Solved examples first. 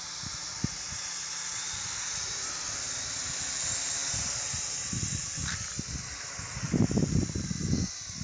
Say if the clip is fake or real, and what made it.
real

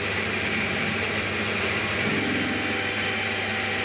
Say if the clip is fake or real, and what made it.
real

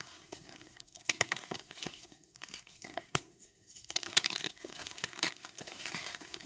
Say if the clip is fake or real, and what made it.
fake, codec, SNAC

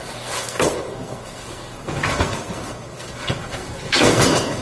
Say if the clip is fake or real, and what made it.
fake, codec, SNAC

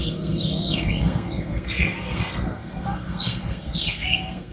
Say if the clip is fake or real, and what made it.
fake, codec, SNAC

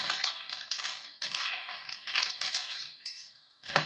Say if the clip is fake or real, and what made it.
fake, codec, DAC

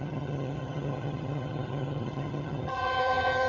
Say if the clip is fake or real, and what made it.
fake, vocoder, HiFi-GAN